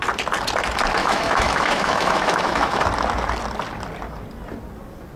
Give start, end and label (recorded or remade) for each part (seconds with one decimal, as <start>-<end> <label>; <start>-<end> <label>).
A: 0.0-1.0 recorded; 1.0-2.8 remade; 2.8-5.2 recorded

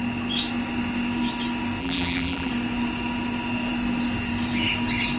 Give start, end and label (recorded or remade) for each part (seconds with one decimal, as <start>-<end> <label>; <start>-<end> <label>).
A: 0.0-1.8 recorded; 1.8-2.5 remade; 2.5-5.2 recorded

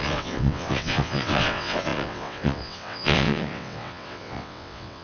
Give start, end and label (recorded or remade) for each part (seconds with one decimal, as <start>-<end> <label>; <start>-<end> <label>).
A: 0.0-5.0 remade

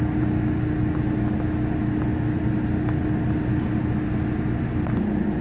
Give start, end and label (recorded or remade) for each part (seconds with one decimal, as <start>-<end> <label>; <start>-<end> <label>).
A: 0.0-5.4 recorded